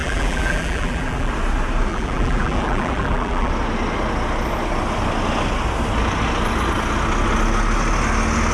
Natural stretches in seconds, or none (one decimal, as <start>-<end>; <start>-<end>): 1.3-1.9; 3.5-8.5